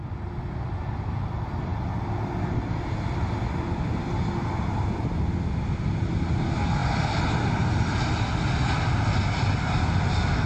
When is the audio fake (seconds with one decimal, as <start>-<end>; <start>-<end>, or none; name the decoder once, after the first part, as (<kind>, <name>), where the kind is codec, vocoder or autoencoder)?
none